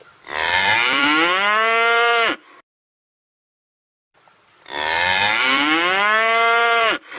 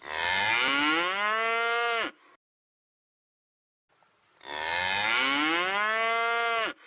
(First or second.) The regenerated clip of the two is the first